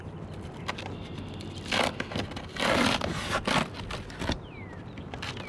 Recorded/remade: recorded